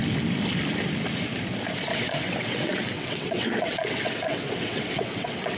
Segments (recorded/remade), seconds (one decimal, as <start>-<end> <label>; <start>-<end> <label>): 0.0-1.9 recorded; 1.9-5.6 remade